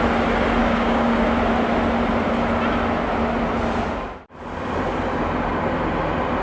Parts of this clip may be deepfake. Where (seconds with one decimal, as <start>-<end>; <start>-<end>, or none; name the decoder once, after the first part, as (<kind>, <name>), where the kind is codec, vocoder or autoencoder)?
0.6-1.2 (codec, DAC)